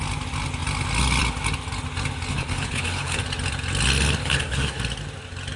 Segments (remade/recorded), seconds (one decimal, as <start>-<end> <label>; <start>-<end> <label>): 0.0-2.3 recorded; 2.3-3.2 remade; 3.2-4.2 recorded; 4.2-4.8 remade; 4.8-5.6 recorded